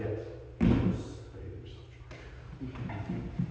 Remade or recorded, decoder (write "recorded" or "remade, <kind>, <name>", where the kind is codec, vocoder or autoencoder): recorded